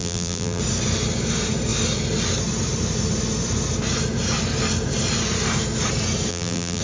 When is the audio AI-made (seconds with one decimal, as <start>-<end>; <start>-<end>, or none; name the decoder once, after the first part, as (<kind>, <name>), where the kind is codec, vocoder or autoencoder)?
0.0-0.6 (vocoder, BigVGAN v2); 6.3-6.8